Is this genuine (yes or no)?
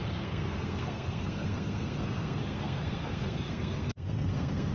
no